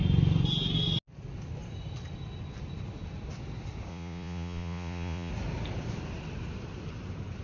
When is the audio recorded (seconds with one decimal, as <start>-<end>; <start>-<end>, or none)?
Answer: 0.0-3.9; 5.3-7.4